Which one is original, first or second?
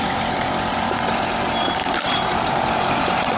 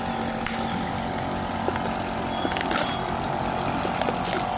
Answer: second